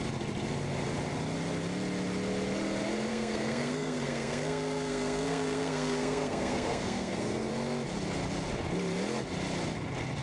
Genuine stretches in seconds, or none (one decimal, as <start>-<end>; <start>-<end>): 0.0-3.1; 7.5-10.2